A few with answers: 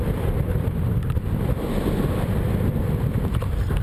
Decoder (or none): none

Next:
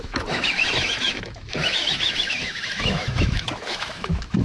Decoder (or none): autoencoder, DAC-VAE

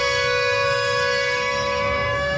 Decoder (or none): codec, SNAC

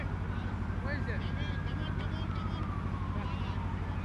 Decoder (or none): none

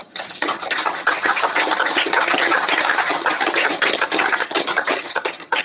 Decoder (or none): vocoder, HiFi-GAN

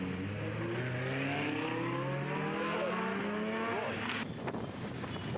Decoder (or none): none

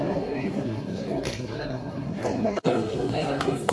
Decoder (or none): codec, SNAC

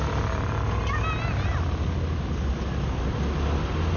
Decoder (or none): none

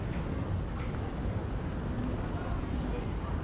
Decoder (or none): none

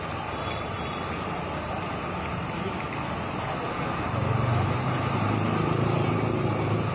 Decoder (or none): none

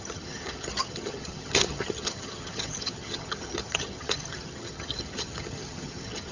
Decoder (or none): vocoder, HiFi-GAN